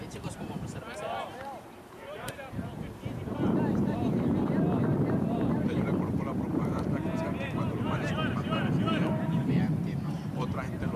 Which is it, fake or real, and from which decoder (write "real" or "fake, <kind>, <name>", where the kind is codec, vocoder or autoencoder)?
fake, vocoder, BigVGAN v2